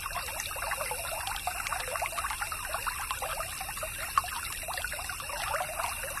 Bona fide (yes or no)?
yes